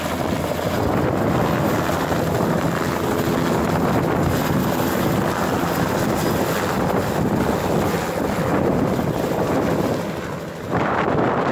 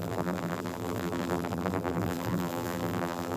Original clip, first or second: first